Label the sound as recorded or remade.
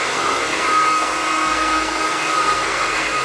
remade